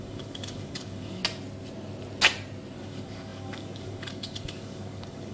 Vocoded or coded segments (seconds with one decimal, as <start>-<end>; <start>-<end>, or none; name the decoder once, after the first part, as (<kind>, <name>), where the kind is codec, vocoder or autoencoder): 0.0-1.2 (codec, DAC); 2.8-5.3